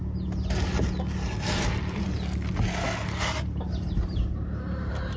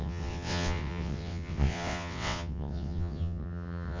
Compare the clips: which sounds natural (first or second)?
first